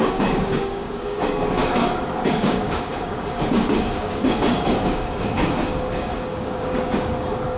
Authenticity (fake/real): fake